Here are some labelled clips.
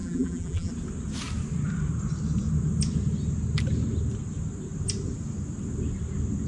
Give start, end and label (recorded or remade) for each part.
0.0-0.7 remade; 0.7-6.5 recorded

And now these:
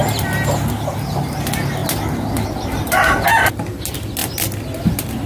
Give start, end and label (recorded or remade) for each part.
0.0-5.3 recorded

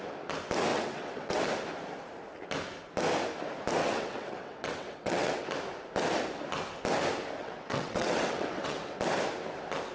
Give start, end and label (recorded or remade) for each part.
0.0-0.7 recorded; 0.7-1.4 remade; 1.4-3.8 recorded; 3.8-5.4 remade; 5.4-7.4 recorded; 7.4-9.0 remade; 9.0-9.9 recorded

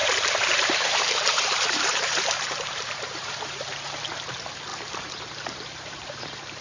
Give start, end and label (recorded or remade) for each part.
0.0-4.0 remade; 4.0-4.7 recorded; 4.7-6.6 remade

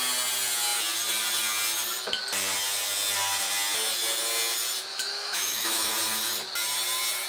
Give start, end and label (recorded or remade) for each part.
0.0-4.9 recorded; 4.9-5.9 remade; 5.9-7.3 recorded